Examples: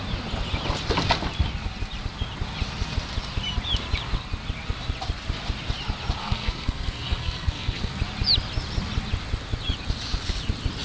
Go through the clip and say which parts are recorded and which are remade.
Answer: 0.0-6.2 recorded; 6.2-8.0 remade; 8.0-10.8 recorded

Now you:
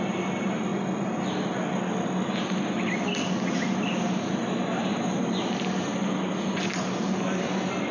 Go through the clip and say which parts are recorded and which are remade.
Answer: 0.0-7.9 recorded

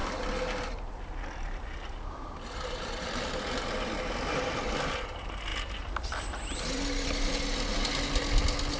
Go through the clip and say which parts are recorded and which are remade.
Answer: 0.0-5.5 recorded; 5.5-7.3 remade; 7.3-8.8 recorded

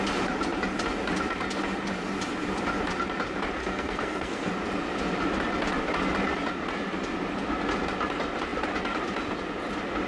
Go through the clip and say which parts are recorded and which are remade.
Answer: 0.0-3.6 recorded; 3.6-4.5 remade; 4.5-10.1 recorded

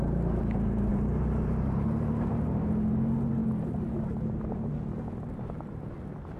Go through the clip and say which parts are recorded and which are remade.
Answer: 0.0-0.9 recorded; 0.9-2.3 remade; 2.3-3.4 recorded; 3.4-3.9 remade; 3.9-6.4 recorded

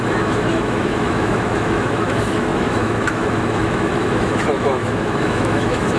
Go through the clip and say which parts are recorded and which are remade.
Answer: 0.0-6.0 remade